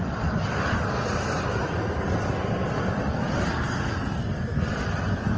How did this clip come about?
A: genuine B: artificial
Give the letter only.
B